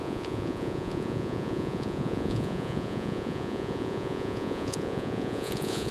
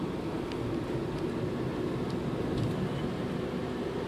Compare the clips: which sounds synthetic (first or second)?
first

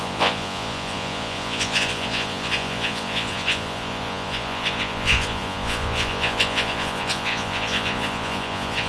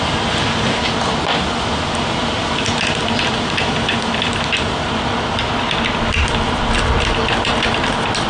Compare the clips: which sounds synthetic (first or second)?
first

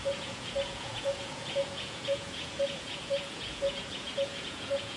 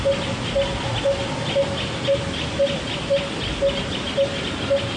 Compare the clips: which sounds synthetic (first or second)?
first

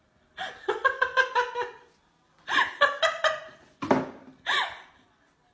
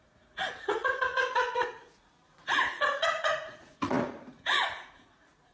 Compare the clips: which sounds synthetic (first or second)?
second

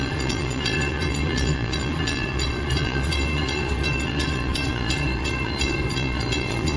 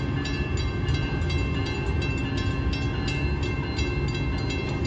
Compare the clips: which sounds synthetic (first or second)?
first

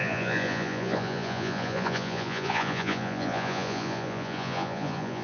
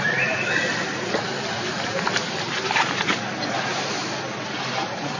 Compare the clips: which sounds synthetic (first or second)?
first